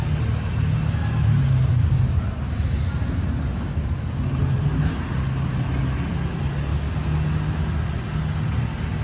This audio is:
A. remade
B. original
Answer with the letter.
B